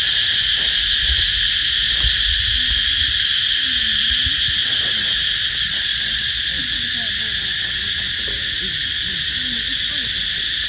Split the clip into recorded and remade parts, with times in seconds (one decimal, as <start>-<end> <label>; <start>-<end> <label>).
0.0-5.9 recorded; 5.9-6.8 remade; 6.8-10.7 recorded

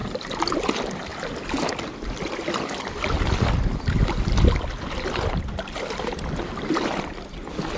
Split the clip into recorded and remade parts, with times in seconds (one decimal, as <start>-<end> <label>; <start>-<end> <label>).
0.0-0.5 remade; 0.5-7.8 recorded

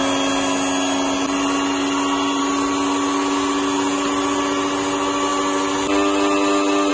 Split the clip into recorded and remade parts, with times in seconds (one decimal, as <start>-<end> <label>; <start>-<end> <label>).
0.0-6.9 recorded

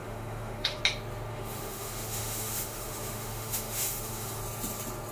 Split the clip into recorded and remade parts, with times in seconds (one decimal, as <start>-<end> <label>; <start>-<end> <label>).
0.0-0.8 remade; 0.8-1.3 recorded; 1.3-4.4 remade; 4.4-5.1 recorded